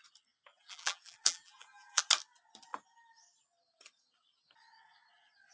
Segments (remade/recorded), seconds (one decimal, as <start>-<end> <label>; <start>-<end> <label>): 0.0-0.5 recorded; 0.5-2.0 remade; 2.0-5.5 recorded